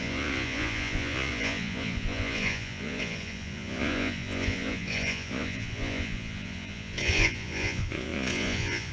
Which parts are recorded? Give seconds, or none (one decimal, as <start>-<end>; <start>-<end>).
none